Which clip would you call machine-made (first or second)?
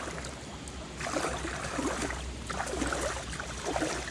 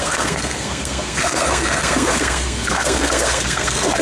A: second